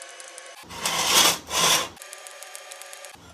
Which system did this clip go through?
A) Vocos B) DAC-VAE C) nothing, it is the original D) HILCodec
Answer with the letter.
C